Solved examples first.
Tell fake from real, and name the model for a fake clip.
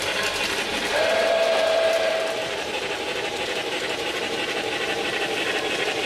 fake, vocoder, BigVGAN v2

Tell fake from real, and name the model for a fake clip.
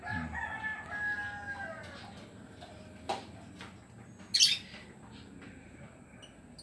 real